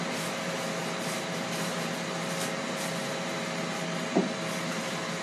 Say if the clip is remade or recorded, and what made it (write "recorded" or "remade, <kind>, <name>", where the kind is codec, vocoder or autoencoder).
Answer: recorded